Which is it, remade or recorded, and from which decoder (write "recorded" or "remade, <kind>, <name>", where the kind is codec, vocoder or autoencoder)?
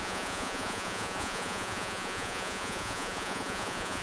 remade, vocoder, Vocos